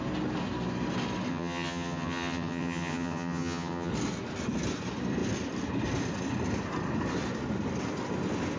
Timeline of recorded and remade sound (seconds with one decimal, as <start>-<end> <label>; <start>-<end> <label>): 0.0-1.3 recorded; 1.3-3.9 remade; 3.9-8.6 recorded